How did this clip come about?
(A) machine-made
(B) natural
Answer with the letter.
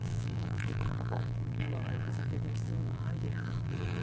A